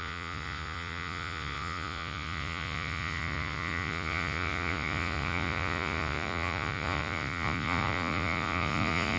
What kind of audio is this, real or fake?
fake